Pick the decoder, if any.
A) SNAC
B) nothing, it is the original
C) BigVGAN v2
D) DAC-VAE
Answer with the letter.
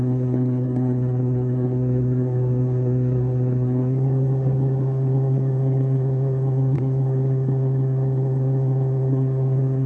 A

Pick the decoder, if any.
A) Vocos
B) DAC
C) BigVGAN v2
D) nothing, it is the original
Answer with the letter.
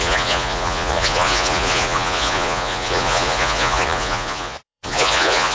A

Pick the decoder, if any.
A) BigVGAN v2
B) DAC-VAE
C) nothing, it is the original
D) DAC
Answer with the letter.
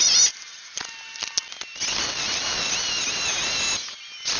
C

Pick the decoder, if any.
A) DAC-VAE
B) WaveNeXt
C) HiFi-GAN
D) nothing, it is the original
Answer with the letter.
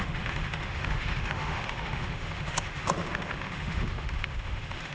A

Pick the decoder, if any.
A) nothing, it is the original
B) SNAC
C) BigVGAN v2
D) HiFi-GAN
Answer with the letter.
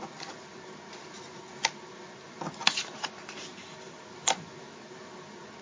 A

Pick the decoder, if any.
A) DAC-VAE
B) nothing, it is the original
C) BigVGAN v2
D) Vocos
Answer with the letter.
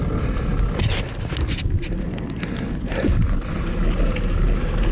B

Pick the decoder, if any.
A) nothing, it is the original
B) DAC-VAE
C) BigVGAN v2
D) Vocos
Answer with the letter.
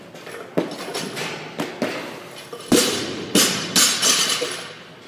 A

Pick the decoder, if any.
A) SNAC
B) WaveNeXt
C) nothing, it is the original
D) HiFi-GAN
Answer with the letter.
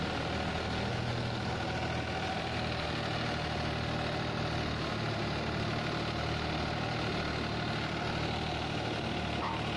C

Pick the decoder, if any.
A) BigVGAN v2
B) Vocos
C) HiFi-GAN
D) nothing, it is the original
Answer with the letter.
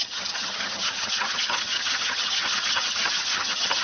C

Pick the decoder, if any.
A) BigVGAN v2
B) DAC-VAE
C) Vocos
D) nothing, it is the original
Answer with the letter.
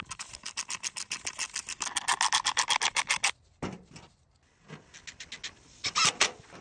D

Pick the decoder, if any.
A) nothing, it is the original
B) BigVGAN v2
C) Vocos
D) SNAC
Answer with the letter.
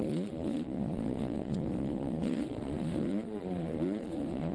C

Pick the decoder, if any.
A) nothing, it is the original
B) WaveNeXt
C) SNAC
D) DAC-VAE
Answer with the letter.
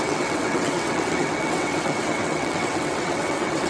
B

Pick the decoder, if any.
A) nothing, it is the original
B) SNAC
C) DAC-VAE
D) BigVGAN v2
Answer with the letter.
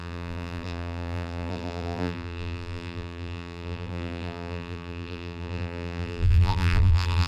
D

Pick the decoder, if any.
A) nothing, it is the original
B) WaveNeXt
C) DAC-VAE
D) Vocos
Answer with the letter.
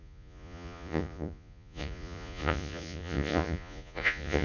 D